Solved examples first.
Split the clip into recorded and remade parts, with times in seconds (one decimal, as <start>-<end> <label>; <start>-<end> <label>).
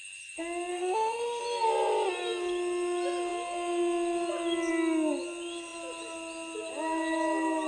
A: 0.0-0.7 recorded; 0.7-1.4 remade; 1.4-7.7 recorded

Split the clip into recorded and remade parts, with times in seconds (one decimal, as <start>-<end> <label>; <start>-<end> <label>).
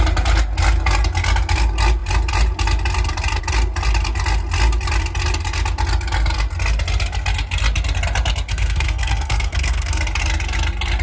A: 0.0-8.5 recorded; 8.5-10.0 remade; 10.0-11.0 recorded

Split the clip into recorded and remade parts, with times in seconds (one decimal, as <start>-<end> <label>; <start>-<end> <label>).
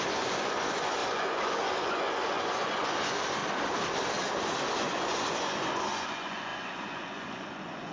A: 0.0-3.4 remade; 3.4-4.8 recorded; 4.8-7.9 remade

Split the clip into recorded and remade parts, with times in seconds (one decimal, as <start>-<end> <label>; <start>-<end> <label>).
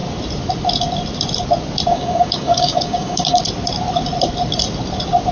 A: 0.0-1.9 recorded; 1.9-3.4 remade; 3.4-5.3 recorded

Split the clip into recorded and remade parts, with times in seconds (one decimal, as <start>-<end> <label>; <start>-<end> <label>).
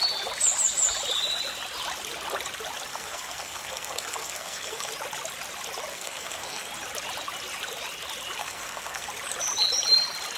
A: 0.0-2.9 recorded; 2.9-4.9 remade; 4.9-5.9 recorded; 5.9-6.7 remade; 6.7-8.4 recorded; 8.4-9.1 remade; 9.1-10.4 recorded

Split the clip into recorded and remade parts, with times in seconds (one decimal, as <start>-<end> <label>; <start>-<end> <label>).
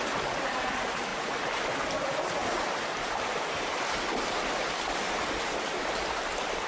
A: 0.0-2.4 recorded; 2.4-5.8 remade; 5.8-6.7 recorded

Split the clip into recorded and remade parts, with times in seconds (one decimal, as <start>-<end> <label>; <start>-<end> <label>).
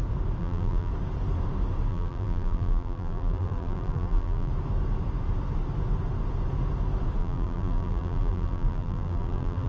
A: 0.0-0.4 recorded; 0.4-0.9 remade; 0.9-1.9 recorded; 1.9-4.5 remade; 4.5-7.2 recorded; 7.2-9.7 remade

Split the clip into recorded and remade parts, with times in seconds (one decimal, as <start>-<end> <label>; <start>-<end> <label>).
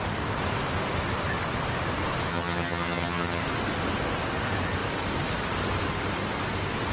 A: 0.0-2.3 recorded; 2.3-3.4 remade; 3.4-6.9 recorded